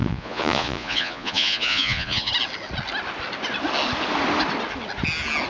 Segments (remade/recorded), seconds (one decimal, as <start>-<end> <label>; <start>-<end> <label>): 0.0-2.3 remade; 2.3-5.5 recorded